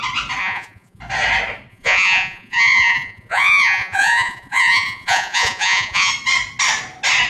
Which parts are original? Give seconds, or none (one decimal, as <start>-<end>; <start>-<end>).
0.0-0.4; 1.0-1.7; 6.1-7.3